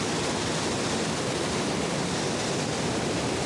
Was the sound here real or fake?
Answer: real